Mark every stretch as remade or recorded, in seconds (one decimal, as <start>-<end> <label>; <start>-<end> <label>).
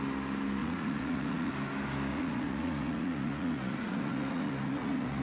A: 0.0-0.6 recorded; 0.6-1.5 remade; 1.5-2.1 recorded; 2.1-5.2 remade